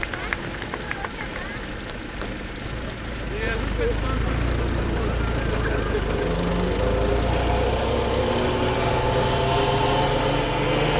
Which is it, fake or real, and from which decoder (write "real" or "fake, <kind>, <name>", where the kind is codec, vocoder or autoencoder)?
real